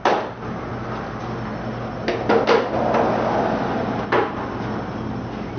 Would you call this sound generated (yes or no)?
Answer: no